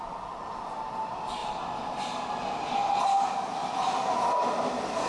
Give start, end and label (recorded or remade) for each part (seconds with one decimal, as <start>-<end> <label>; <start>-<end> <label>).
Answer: 0.0-5.1 recorded